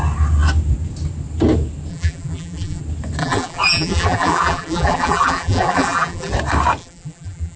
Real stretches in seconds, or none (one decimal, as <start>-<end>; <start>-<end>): 0.0-1.9; 2.8-3.2; 6.3-6.8